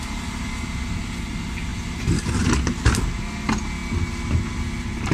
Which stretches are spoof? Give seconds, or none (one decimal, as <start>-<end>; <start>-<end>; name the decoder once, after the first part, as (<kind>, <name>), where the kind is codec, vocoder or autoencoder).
none